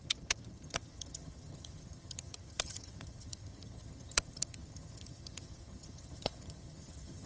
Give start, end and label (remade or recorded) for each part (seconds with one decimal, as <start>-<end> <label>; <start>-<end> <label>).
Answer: 0.0-7.3 remade